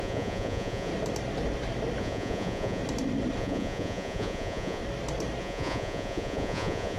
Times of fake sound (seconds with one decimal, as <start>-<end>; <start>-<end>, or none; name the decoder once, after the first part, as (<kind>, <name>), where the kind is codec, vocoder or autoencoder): 0.0-0.9 (vocoder, Vocos); 2.0-2.8; 3.4-4.8; 5.4-7.0